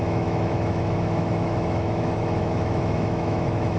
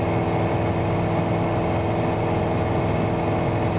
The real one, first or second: second